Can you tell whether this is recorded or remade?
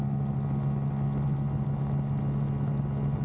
recorded